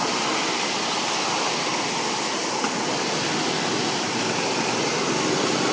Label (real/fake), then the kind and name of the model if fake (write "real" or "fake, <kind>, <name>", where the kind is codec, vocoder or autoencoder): real